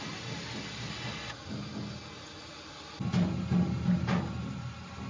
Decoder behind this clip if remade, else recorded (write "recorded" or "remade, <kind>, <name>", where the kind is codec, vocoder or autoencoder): recorded